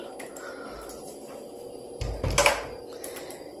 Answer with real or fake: real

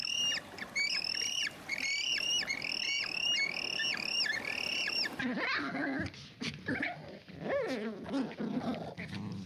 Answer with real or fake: real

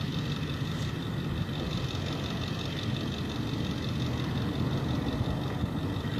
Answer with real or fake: real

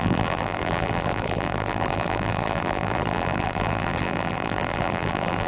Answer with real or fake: fake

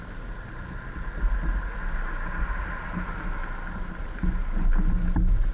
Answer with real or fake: real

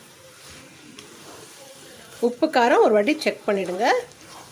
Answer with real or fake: fake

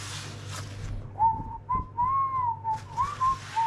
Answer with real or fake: real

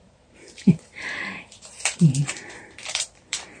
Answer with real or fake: fake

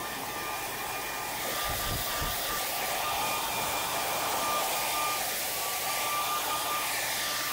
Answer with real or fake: real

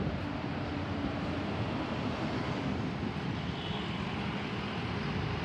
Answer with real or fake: real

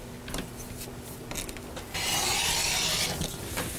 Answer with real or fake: real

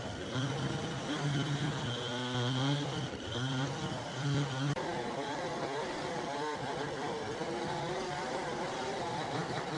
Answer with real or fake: fake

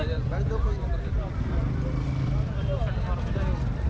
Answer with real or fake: fake